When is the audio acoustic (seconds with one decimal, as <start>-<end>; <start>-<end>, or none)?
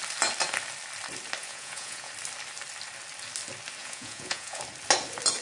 0.0-1.4; 2.1-3.8; 4.6-5.4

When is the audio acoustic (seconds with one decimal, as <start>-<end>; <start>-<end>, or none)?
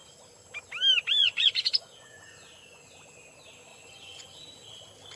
0.0-1.2; 2.9-3.7; 4.4-5.2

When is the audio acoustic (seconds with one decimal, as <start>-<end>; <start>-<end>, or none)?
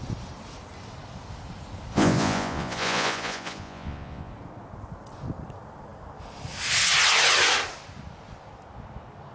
0.0-1.9; 4.3-9.3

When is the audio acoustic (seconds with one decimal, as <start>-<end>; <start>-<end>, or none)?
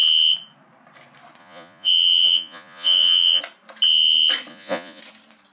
0.0-1.4; 3.4-4.5; 5.0-5.5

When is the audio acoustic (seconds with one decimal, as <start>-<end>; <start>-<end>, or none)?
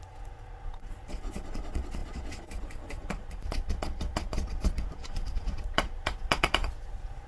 none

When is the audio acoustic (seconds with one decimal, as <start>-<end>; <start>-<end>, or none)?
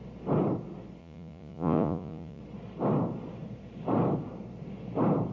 0.0-1.0; 2.4-5.3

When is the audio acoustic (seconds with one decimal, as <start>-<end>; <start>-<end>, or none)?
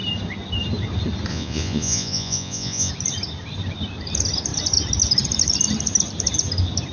0.0-1.3; 2.9-6.9